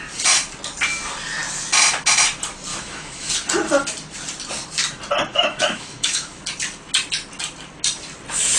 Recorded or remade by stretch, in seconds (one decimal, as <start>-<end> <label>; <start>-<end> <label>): 0.0-2.7 recorded; 2.7-3.3 remade; 3.3-5.3 recorded; 5.3-6.4 remade; 6.4-8.6 recorded